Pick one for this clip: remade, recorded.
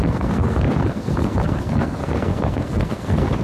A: remade